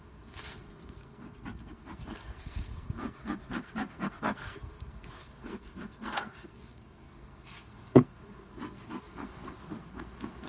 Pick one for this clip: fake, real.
fake